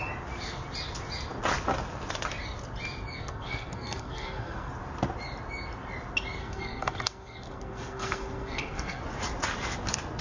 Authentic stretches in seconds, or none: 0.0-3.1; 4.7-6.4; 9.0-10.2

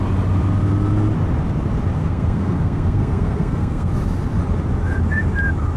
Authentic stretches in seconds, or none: 0.0-2.0; 3.9-5.8

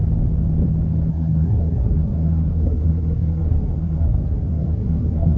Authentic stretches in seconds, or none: 0.0-1.1

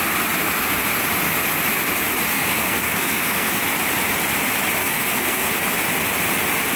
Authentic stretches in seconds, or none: 0.0-2.3; 3.6-4.8; 5.5-6.8

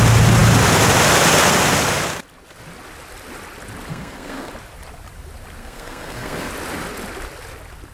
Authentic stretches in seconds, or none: 0.0-3.9; 4.5-5.6; 6.5-7.9

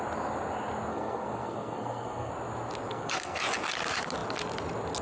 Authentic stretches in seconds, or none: 0.0-0.9; 2.3-2.9; 3.4-5.0

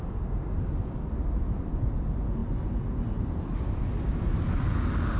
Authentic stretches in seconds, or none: 0.0-5.2